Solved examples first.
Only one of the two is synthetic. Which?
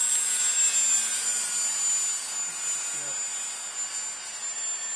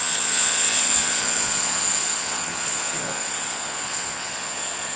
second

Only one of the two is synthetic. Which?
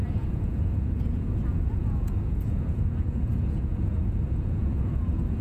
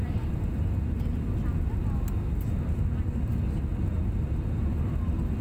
first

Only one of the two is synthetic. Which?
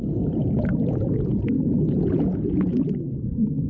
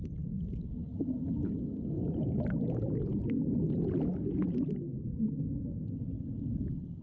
first